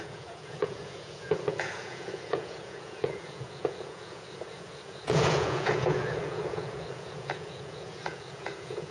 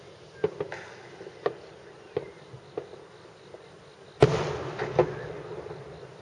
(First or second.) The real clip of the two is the second